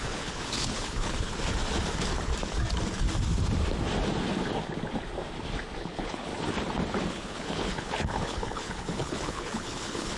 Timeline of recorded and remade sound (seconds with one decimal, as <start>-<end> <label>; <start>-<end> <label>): 0.0-1.3 remade; 1.3-5.8 recorded; 5.8-6.3 remade; 6.3-7.1 recorded; 7.1-10.2 remade